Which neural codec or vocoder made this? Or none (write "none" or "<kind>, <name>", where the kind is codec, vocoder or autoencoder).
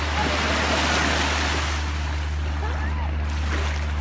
none